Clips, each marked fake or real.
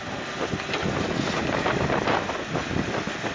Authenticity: real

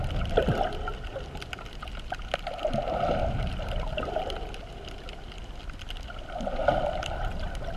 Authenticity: real